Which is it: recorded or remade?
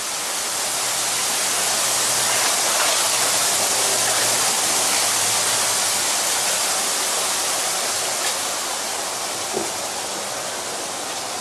recorded